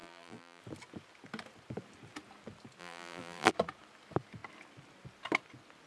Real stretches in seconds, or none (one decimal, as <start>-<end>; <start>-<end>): 0.6-2.8; 3.5-5.9